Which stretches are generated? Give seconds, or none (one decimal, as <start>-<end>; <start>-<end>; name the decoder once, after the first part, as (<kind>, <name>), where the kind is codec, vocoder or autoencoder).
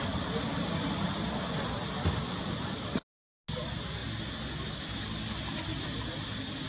none